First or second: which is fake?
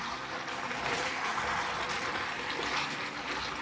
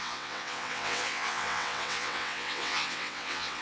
second